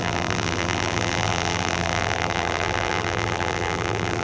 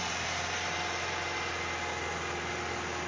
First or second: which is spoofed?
first